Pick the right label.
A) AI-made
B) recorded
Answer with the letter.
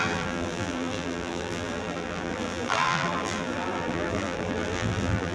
A